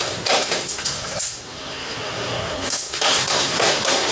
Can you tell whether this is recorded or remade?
remade